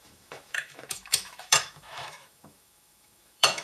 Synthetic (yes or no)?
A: yes